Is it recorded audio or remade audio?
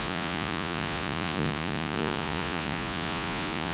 remade